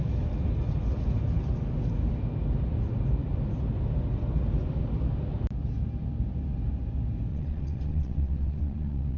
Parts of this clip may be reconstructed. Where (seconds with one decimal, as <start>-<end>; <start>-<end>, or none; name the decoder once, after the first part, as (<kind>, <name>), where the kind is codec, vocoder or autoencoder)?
7.3-9.2 (vocoder, WaveNeXt)